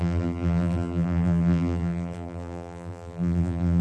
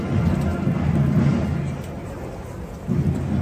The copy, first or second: first